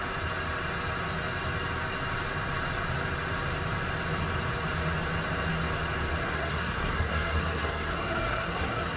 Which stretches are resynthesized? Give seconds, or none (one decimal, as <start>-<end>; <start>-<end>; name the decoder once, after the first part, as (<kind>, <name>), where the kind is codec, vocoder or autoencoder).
6.2-9.0 (codec, SNAC)